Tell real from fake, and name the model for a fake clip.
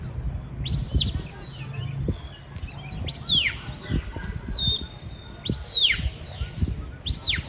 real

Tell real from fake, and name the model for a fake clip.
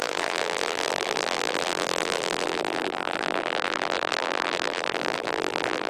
fake, vocoder, BigVGAN v2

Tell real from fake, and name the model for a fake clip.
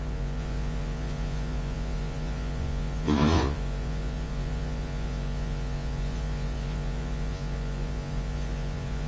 fake, vocoder, Vocos